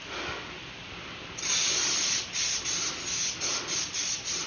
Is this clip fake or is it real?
real